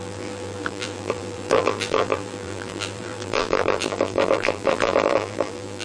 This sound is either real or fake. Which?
fake